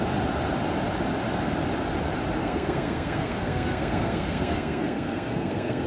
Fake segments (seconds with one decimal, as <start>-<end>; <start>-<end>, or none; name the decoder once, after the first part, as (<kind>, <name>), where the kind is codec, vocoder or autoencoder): 2.4-5.9 (codec, SNAC)